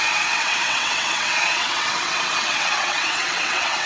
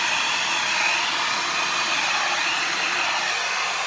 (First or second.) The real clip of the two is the second